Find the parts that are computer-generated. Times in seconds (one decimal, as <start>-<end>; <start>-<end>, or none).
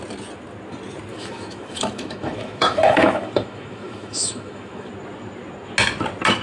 1.1-4.9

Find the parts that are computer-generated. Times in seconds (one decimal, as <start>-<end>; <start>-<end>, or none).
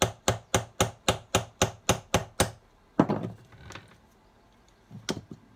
none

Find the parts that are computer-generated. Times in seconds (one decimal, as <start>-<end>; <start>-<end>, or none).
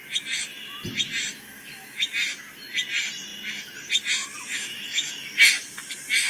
1.3-2.1; 4.5-5.4